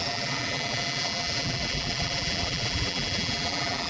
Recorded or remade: remade